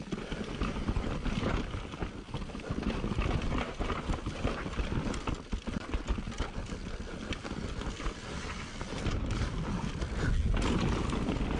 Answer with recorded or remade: recorded